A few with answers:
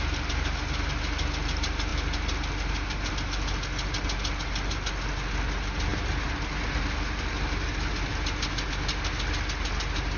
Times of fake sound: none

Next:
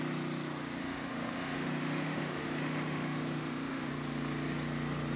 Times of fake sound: 0.8-3.9 (autoencoder, DAC-VAE)

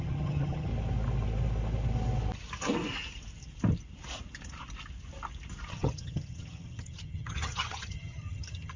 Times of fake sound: 0.0-0.7 (vocoder, HiFi-GAN); 5.7-8.8